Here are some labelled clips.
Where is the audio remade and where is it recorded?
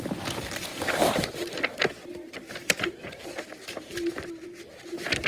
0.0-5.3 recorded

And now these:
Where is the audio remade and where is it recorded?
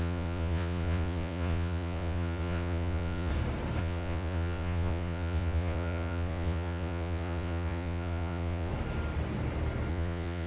0.0-3.3 remade; 3.3-3.8 recorded; 3.8-8.7 remade; 8.7-9.9 recorded; 9.9-10.5 remade